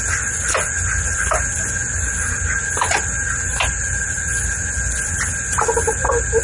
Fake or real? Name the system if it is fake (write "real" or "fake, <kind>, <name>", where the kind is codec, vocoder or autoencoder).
real